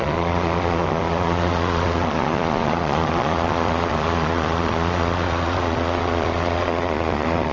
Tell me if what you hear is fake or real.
fake